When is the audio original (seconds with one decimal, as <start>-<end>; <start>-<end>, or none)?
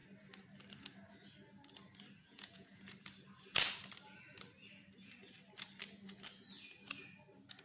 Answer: 0.0-2.2; 2.9-7.6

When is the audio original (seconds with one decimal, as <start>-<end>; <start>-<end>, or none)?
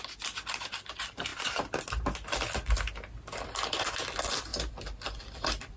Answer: 0.0-4.5; 5.2-5.8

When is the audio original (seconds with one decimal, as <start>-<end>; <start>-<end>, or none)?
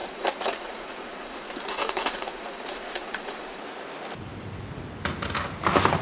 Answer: 3.6-6.0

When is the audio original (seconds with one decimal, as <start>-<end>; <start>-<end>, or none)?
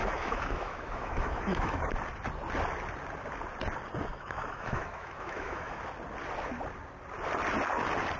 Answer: 1.9-4.1; 5.8-8.2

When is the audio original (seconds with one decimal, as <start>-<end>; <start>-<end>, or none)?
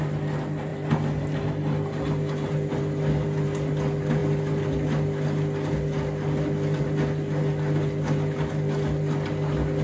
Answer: 0.0-9.8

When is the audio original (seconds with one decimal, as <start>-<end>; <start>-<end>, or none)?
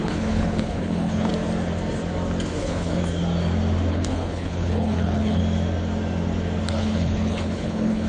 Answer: 1.3-2.6; 3.0-3.9; 5.4-6.7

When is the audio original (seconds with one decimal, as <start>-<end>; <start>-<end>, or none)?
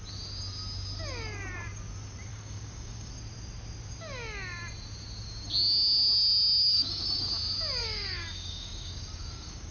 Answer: 0.0-2.3; 3.1-6.6; 7.3-7.8